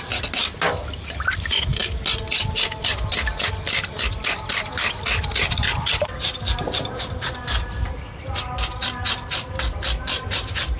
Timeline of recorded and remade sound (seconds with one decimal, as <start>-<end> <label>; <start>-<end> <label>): 0.0-10.8 recorded